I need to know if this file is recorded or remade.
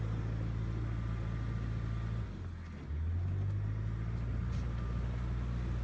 recorded